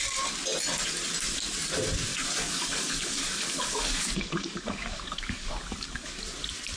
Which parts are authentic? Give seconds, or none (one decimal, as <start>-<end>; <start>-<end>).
0.0-2.1; 6.2-6.8